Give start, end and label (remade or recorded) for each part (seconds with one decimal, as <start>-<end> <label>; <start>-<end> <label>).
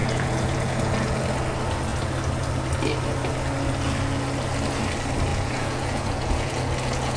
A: 0.0-1.2 remade; 1.2-5.3 recorded; 5.3-7.2 remade